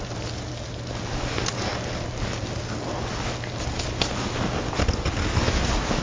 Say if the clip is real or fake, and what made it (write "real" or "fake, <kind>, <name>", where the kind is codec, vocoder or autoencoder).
real